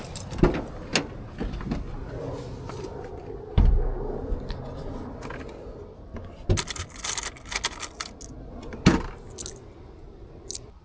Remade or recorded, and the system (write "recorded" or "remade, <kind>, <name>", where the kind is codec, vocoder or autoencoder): recorded